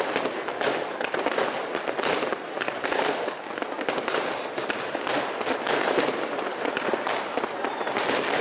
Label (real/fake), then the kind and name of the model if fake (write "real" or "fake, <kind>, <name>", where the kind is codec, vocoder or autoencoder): real